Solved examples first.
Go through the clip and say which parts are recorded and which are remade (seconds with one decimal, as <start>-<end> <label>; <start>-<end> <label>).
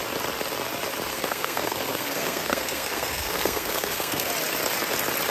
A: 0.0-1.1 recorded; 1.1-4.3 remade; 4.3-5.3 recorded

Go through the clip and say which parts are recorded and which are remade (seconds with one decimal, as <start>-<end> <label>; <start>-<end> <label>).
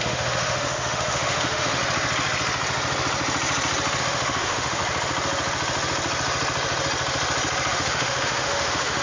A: 0.0-1.8 remade; 1.8-4.0 recorded; 4.0-4.8 remade; 4.8-7.7 recorded; 7.7-9.0 remade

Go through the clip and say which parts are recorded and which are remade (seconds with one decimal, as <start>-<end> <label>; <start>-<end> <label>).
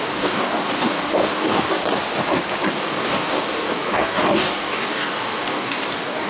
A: 0.0-1.8 remade; 1.8-2.7 recorded; 2.7-6.3 remade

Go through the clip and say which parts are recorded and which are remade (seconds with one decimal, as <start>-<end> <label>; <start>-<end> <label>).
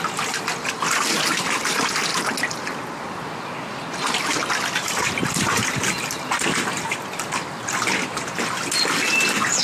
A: 0.0-2.1 remade; 2.1-6.8 recorded; 6.8-8.1 remade; 8.1-9.6 recorded